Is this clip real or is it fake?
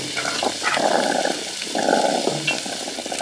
real